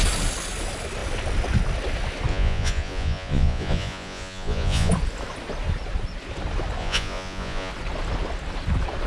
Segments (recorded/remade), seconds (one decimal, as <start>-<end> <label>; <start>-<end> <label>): 0.0-2.3 recorded; 2.3-4.9 remade; 4.9-6.8 recorded; 6.8-7.7 remade; 7.7-9.1 recorded